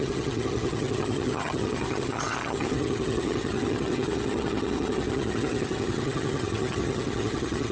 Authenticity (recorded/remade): remade